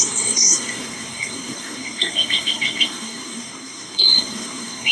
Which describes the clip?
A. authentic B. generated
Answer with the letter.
B